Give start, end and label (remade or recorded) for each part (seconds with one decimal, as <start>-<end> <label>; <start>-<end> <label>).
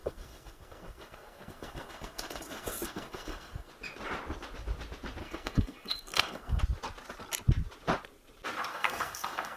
0.0-3.7 remade; 3.7-5.2 recorded; 5.2-6.6 remade; 6.6-8.7 recorded; 8.7-9.6 remade